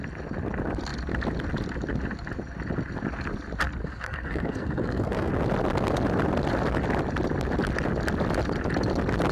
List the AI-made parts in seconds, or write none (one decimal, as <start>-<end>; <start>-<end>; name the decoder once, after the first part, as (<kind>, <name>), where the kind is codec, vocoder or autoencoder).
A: 3.8-5.3 (codec, SNAC)